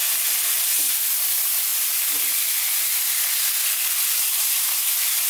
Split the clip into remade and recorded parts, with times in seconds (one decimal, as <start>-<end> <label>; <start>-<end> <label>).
0.0-5.3 recorded